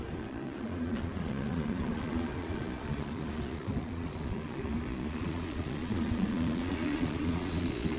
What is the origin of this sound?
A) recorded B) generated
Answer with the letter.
B